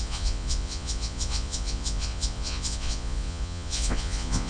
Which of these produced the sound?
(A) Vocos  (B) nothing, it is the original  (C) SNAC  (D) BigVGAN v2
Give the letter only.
A